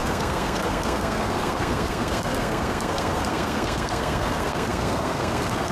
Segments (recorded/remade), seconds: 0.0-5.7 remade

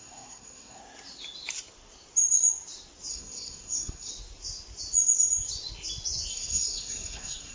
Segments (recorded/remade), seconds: 0.0-0.8 remade; 0.8-3.1 recorded; 3.1-4.1 remade; 4.1-6.3 recorded; 6.3-7.5 remade

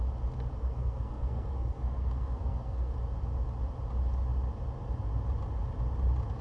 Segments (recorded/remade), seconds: 0.0-0.6 recorded; 0.6-2.9 remade; 2.9-6.4 recorded

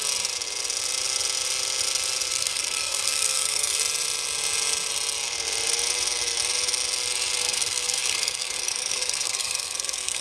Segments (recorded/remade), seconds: 0.0-2.3 recorded; 2.3-3.8 remade; 3.8-7.4 recorded; 7.4-10.2 remade

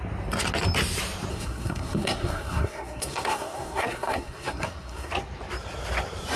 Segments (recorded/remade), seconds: 0.0-1.3 recorded; 1.3-5.1 remade; 5.1-6.4 recorded

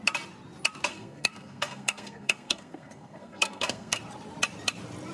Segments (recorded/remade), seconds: 0.0-0.9 recorded; 0.9-4.0 remade; 4.0-5.1 recorded

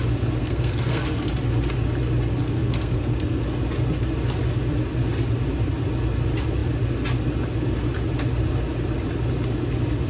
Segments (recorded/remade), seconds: 0.0-0.4 recorded; 0.4-1.2 remade; 1.2-2.4 recorded; 2.4-3.4 remade; 3.4-10.1 recorded